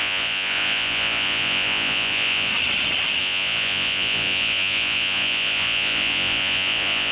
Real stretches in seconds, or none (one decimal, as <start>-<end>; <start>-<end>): 2.5-3.2